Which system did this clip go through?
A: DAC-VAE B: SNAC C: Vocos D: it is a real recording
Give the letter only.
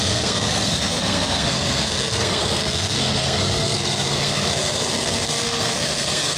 B